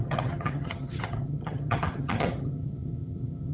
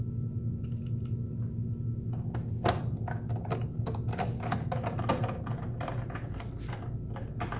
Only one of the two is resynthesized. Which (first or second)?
first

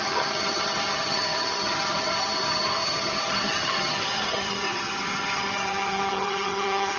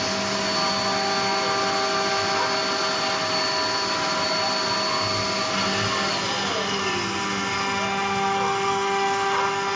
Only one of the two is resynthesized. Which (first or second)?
first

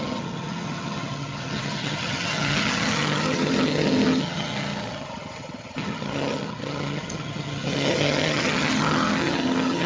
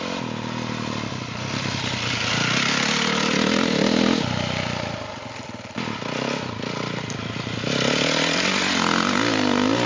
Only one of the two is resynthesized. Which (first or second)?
first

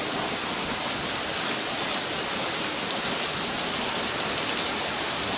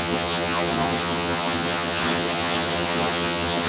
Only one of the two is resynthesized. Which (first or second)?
second